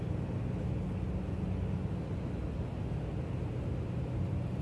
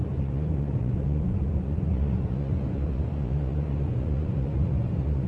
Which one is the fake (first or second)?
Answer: second